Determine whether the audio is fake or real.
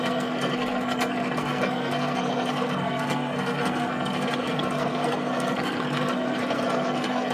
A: fake